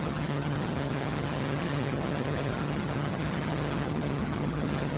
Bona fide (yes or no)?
no